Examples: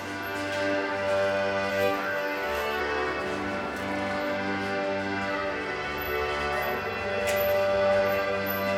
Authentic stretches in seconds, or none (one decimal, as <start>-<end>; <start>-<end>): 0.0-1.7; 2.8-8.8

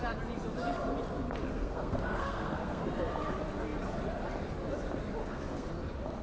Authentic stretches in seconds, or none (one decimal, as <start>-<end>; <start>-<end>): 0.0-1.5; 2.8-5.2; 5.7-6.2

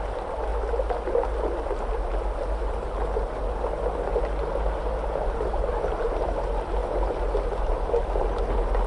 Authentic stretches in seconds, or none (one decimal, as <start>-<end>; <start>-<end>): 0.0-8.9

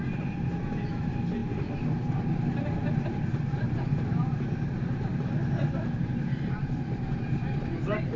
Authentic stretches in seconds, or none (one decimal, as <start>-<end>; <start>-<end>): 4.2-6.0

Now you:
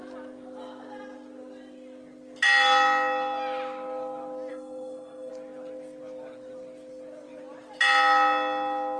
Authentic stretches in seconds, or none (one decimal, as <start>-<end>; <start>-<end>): 0.0-4.5; 5.3-9.0